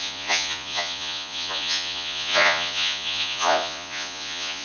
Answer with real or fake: fake